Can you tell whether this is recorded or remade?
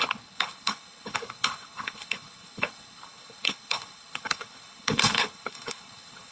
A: remade